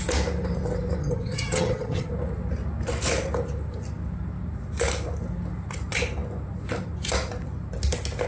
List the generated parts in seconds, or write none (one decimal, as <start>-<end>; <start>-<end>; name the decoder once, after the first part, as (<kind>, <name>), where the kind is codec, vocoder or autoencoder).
1.0-2.1 (vocoder, HiFi-GAN)